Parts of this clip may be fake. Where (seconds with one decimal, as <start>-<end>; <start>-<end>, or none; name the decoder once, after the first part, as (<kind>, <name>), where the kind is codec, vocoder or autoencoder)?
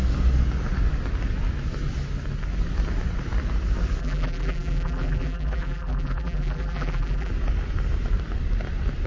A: 4.0-7.3 (vocoder, BigVGAN v2)